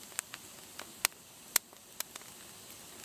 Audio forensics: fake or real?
real